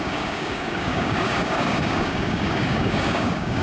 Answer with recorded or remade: remade